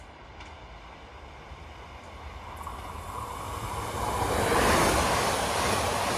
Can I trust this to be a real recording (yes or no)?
yes